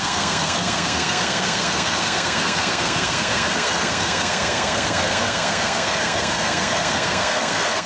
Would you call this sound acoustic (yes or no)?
no